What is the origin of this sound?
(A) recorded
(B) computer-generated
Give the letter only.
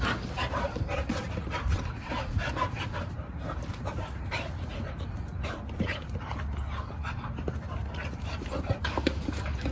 A